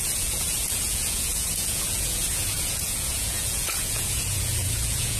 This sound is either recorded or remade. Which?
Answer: remade